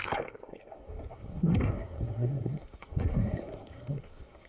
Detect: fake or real fake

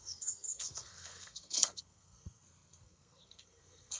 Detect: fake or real fake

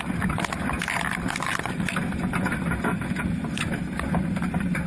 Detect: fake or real real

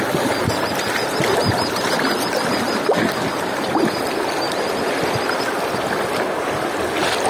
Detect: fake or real real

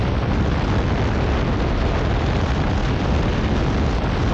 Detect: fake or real real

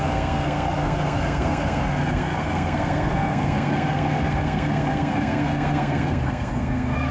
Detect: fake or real fake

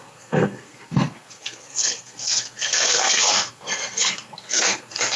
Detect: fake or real fake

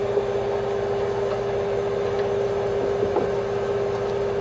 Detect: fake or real real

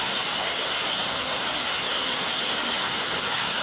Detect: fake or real fake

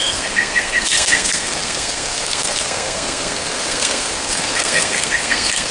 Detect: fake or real fake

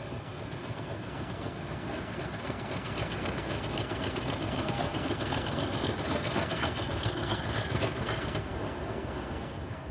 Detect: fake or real fake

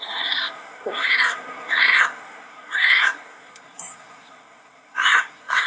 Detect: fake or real fake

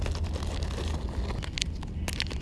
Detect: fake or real real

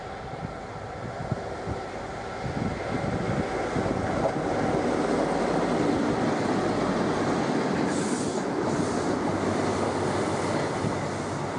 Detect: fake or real real